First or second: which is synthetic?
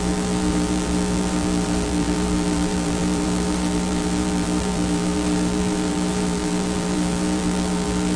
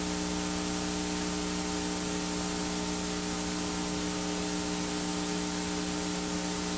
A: first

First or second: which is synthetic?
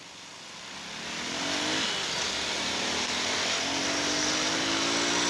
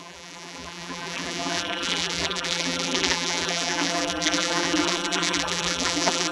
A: second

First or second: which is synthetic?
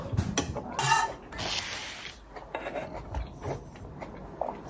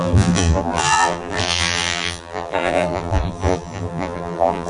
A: second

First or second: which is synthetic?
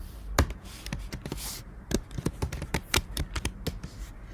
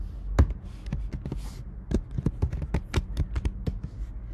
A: first